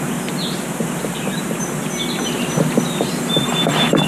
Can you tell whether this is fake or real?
real